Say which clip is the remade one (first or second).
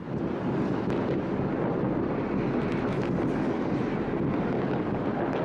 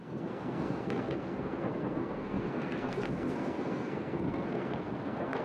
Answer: second